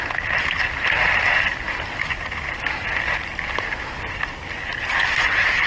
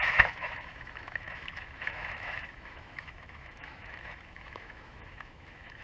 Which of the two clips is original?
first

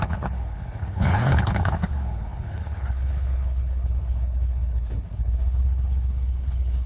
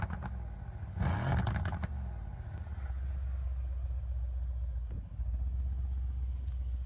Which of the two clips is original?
second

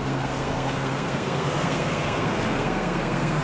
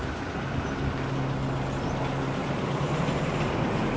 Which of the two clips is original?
second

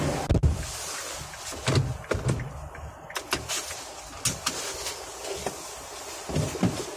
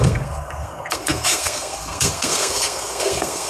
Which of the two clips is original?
first